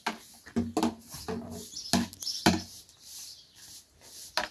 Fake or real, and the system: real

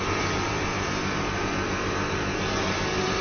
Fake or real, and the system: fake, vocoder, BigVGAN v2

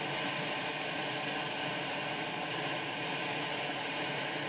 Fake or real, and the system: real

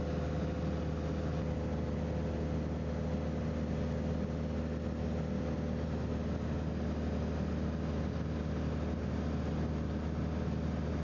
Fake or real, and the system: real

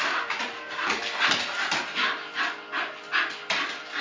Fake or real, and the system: real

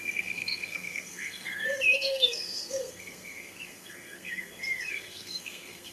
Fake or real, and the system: fake, codec, SNAC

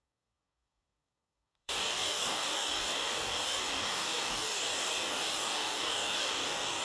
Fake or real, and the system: fake, codec, DAC